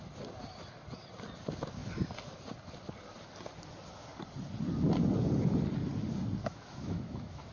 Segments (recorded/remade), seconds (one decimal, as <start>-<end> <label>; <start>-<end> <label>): 0.0-6.4 recorded; 6.4-7.5 remade